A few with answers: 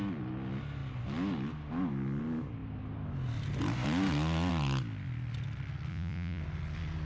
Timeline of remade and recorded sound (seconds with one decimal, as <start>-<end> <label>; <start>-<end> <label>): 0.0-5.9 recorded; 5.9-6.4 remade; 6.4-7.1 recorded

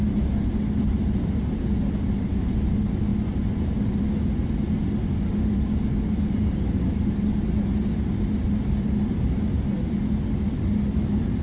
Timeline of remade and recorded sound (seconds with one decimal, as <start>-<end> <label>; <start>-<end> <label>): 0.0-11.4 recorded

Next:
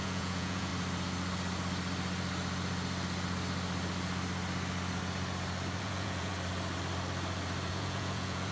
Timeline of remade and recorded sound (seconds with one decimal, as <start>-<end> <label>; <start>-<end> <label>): 0.0-0.7 remade; 0.7-5.8 recorded; 5.8-6.3 remade; 6.3-7.7 recorded; 7.7-8.5 remade